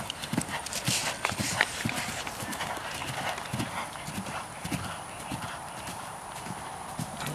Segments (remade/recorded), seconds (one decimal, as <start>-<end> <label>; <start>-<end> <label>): 0.0-1.0 remade; 1.0-1.7 recorded; 1.7-3.0 remade; 3.0-3.6 recorded; 3.6-7.3 remade